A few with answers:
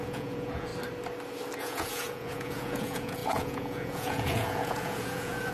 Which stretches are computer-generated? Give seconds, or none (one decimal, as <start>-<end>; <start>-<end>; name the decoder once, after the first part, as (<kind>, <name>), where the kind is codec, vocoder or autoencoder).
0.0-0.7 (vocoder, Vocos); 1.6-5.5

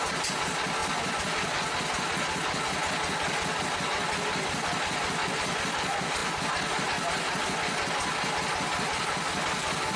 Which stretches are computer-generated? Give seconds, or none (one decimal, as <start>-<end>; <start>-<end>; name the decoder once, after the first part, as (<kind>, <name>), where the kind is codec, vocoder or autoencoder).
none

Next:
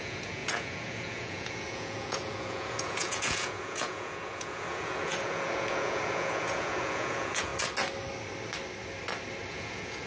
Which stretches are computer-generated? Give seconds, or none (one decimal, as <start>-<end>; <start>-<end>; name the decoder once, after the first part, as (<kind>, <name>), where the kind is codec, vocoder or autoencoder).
0.0-7.5 (vocoder, Vocos); 9.5-10.1

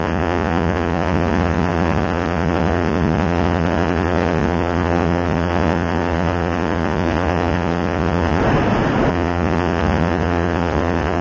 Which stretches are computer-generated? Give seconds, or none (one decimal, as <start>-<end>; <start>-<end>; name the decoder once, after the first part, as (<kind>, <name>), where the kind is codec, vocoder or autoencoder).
0.0-8.4 (vocoder, Vocos); 9.1-11.2

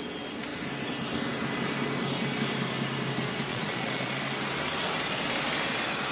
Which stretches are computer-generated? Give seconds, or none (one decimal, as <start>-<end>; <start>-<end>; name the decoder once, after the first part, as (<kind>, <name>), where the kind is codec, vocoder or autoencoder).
3.5-4.2 (vocoder, Vocos)